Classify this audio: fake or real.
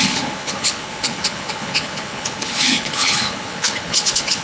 fake